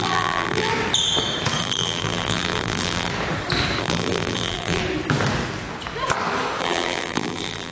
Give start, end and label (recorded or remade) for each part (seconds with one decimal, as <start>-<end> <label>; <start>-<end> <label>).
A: 0.0-0.7 remade; 0.7-1.6 recorded; 1.6-3.1 remade; 3.1-3.8 recorded; 3.8-4.8 remade; 4.8-6.6 recorded; 6.6-7.7 remade